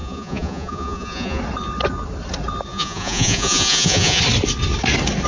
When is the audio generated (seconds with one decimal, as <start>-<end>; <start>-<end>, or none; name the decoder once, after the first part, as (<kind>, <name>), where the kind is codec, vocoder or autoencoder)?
0.0-1.4 (vocoder, Vocos); 2.7-4.2